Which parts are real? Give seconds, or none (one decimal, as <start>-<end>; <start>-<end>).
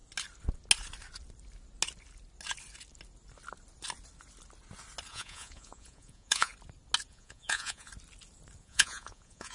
0.0-5.1; 6.5-7.1; 7.9-8.6